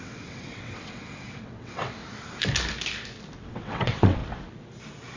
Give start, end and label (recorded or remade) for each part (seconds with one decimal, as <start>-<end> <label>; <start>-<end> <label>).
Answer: 0.0-2.0 remade; 2.0-3.4 recorded; 3.4-4.2 remade; 4.2-5.2 recorded